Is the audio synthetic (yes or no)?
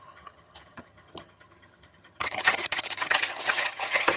yes